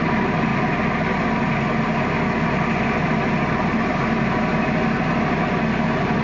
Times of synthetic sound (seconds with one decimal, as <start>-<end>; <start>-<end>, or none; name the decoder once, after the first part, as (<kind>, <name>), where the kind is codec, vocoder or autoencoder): none

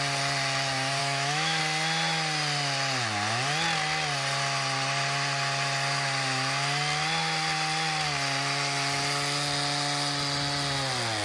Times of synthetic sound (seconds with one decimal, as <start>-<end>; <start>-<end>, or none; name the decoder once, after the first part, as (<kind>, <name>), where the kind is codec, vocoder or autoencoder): 1.0-1.6 (autoencoder, DAC-VAE)

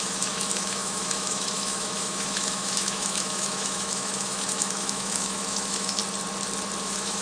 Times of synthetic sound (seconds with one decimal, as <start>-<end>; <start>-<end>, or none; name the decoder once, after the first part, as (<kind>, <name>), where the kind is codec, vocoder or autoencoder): 0.0-6.0 (autoencoder, DAC-VAE); 6.8-7.2